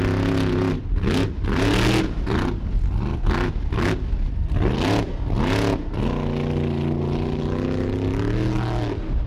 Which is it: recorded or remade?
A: recorded